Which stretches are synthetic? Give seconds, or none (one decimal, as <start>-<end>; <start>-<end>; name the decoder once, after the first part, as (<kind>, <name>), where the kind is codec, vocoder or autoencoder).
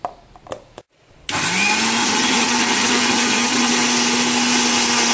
2.0-3.7 (vocoder, HiFi-GAN)